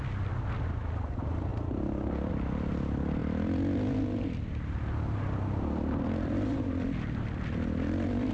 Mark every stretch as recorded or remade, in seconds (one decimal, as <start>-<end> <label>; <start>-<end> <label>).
0.0-1.5 recorded; 1.5-2.3 remade; 2.3-3.2 recorded; 3.2-8.3 remade